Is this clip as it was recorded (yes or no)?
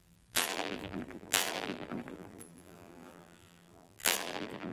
no